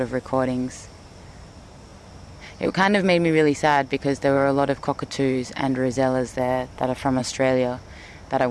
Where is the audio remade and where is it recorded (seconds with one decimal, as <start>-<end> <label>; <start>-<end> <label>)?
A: 0.0-1.9 remade; 1.9-3.0 recorded; 3.0-7.2 remade; 7.2-8.5 recorded